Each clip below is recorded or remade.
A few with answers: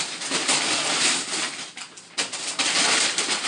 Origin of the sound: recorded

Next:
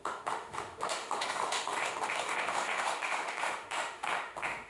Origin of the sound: remade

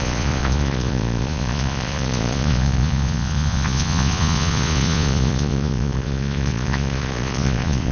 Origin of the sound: remade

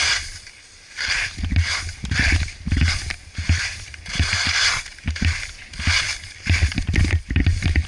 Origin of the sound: recorded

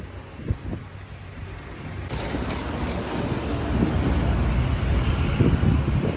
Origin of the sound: recorded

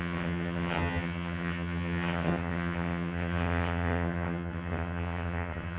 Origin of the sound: remade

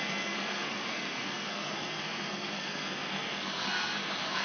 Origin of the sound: remade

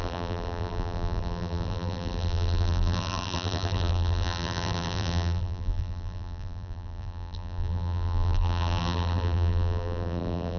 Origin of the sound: remade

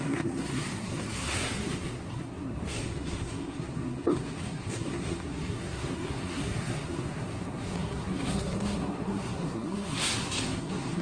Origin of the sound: remade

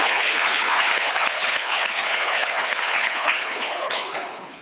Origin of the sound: remade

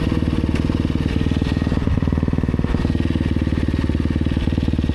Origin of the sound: recorded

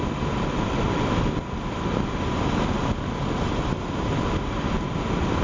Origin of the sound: recorded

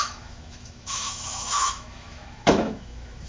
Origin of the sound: remade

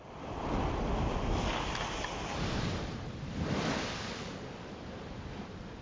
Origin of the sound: recorded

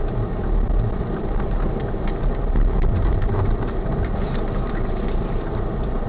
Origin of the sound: recorded